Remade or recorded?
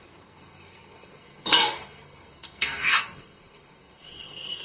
remade